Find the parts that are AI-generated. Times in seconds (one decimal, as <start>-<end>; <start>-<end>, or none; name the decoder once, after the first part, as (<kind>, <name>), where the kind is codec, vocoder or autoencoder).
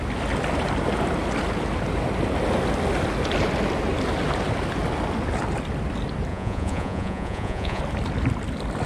6.3-7.8 (vocoder, Vocos)